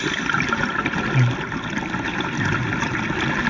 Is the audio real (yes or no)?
yes